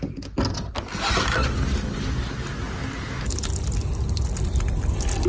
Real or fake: real